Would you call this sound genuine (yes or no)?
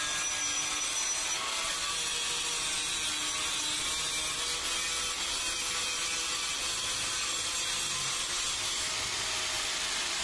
yes